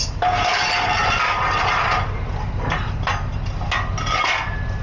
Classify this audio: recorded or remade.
recorded